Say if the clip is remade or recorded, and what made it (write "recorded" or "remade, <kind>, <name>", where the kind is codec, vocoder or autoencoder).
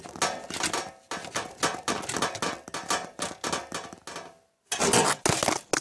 recorded